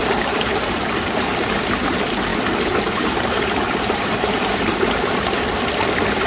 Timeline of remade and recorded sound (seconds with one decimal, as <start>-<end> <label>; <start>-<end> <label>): 0.0-1.6 remade; 1.6-2.3 recorded; 2.3-5.5 remade; 5.5-6.3 recorded